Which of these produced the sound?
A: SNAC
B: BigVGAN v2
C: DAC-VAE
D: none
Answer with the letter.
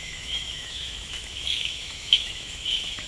C